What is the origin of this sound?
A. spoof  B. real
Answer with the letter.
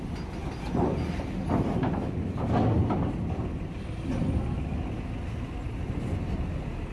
B